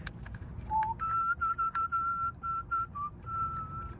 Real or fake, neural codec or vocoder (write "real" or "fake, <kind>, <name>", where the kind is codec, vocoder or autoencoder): real